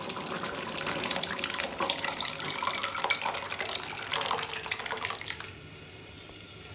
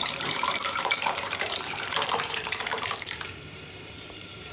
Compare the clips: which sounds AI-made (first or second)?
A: second